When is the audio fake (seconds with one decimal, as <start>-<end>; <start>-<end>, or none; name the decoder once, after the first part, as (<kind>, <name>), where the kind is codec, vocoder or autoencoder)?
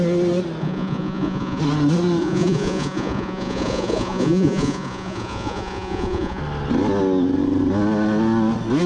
0.6-1.6 (vocoder, Vocos); 2.2-6.4